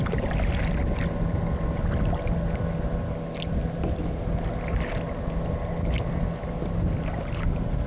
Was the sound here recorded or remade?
recorded